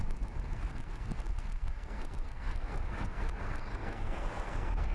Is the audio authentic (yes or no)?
no